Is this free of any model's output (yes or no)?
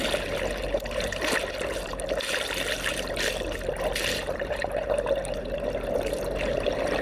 no